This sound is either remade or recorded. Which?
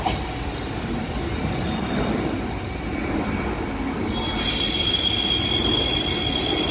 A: recorded